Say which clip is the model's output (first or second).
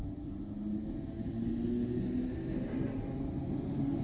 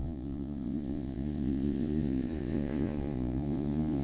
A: second